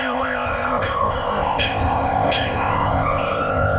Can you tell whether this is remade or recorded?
remade